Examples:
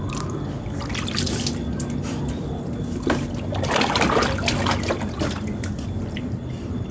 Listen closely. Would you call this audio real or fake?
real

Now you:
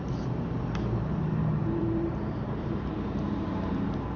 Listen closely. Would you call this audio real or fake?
fake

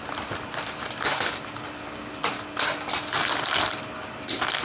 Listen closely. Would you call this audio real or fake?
real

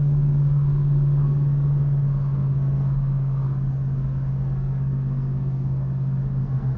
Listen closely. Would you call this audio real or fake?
fake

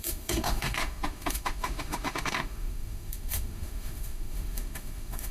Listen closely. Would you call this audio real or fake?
fake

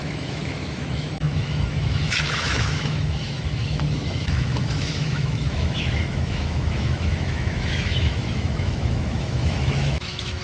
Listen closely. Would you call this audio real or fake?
fake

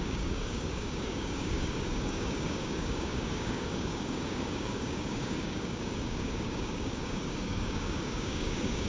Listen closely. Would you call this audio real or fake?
fake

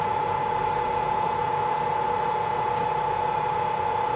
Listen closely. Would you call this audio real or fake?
real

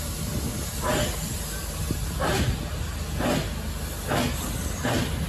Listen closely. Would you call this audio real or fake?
real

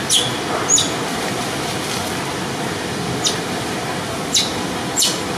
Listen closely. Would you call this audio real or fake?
real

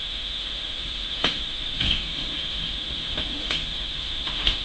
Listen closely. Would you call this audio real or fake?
fake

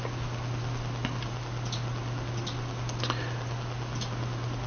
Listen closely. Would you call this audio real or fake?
real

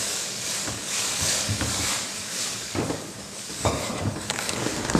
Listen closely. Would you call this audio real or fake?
fake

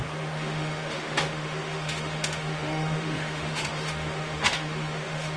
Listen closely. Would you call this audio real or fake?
fake